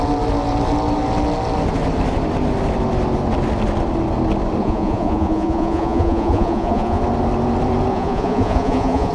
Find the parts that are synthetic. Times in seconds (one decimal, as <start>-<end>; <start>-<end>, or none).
4.6-7.0; 7.9-9.1

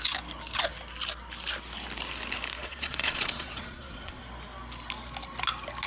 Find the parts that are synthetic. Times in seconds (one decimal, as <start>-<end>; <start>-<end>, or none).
2.6-4.2

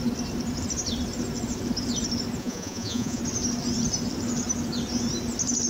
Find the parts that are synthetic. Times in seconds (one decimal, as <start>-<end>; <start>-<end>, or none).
2.4-3.2

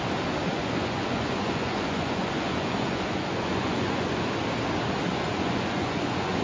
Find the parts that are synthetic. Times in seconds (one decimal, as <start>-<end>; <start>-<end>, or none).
0.5-4.3; 5.1-6.4